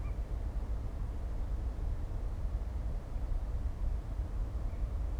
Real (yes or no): no